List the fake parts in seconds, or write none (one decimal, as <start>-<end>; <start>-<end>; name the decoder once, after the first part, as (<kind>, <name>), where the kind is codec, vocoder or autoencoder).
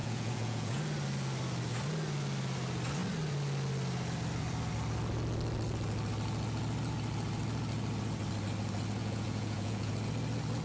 0.0-0.8 (vocoder, Vocos); 9.0-9.9